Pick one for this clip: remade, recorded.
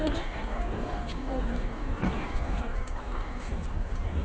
remade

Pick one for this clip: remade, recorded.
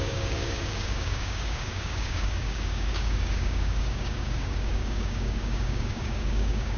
remade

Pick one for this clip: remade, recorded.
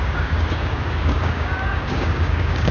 remade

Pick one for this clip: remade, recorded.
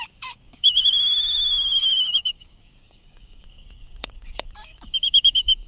remade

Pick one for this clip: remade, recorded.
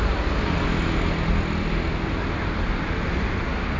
recorded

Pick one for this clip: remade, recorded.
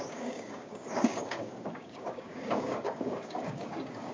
remade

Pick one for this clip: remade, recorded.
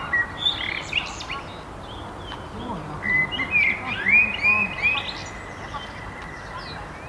recorded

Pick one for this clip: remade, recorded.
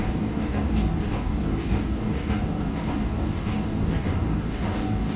remade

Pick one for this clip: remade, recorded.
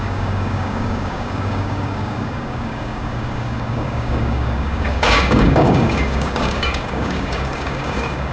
remade